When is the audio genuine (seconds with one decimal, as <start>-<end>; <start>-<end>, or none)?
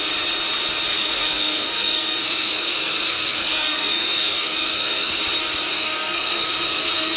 0.0-0.9; 5.2-5.7